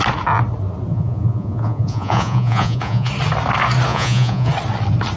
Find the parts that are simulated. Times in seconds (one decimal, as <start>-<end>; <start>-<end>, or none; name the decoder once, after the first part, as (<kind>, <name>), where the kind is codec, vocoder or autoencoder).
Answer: 0.9-3.1 (vocoder, Vocos); 3.9-4.5